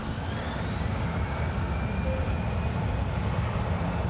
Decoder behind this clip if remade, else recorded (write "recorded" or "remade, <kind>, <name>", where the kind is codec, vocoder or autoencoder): recorded